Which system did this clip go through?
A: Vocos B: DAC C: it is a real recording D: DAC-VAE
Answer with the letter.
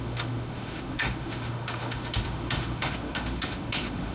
D